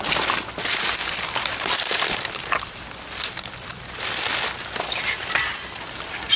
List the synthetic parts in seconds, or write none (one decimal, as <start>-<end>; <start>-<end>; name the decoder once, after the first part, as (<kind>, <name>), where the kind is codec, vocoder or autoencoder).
1.0-4.8 (vocoder, BigVGAN v2); 5.2-6.4